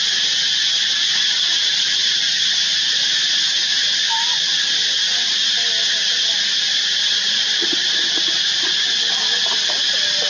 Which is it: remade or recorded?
recorded